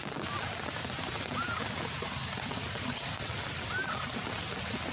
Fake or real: real